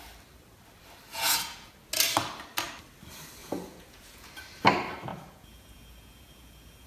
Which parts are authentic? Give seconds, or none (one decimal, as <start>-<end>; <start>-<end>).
0.0-1.1; 1.7-3.4; 4.3-5.1